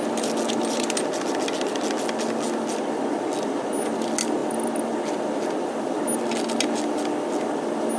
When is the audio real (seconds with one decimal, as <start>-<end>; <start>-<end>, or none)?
0.0-8.0